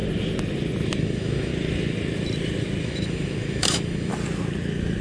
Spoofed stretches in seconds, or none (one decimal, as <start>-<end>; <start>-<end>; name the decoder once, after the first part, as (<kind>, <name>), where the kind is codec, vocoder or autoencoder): 1.0-1.5 (autoencoder, DAC-VAE); 2.8-4.1